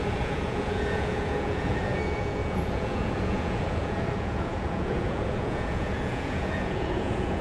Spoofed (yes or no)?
yes